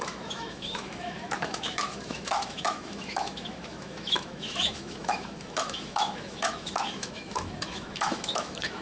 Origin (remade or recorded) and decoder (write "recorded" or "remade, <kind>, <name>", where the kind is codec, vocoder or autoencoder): remade, autoencoder, DAC-VAE